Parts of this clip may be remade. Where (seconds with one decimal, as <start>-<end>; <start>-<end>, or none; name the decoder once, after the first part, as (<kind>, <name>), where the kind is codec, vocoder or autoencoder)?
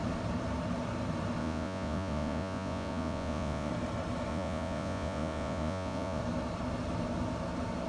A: 1.4-3.7 (vocoder, Vocos); 4.3-6.2